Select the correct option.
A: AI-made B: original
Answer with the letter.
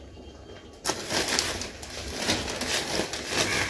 B